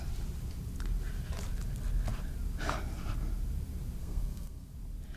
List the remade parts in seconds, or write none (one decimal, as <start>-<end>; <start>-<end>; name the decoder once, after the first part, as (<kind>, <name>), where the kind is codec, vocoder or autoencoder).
4.0-4.7 (codec, SNAC)